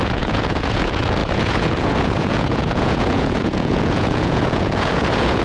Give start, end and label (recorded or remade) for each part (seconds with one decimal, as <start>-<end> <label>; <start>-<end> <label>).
0.0-5.4 remade